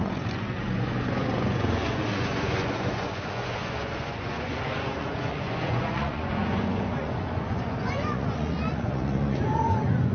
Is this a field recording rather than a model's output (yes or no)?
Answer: no